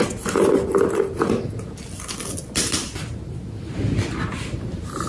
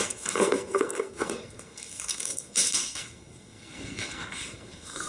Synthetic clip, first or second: second